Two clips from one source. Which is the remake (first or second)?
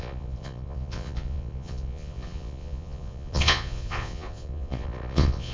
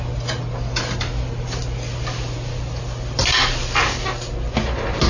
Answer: first